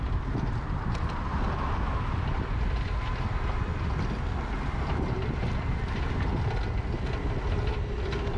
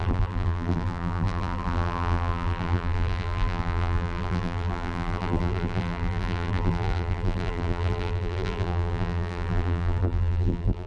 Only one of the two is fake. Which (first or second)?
second